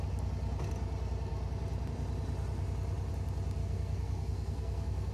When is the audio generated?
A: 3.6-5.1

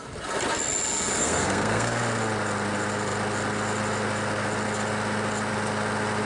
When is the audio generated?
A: 1.2-2.0

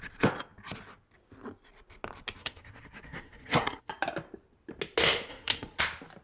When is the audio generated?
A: 2.4-3.9; 5.3-5.8

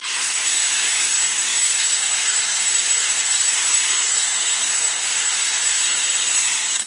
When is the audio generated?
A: 0.0-6.9

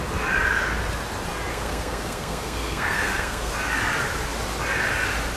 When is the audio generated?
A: 1.5-3.5